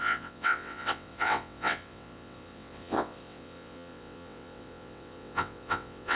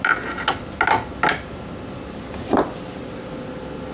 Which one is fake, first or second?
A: first